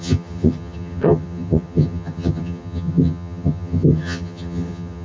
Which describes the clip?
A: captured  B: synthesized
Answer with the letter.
B